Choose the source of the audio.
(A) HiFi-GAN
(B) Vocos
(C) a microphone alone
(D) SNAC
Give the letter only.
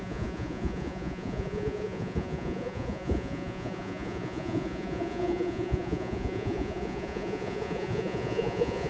B